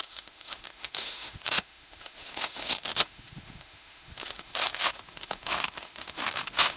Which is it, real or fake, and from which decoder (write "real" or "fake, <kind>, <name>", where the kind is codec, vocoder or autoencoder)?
fake, autoencoder, DAC-VAE